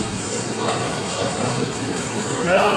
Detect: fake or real fake